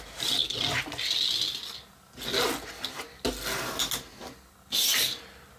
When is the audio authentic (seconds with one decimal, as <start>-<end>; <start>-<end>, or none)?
0.0-5.6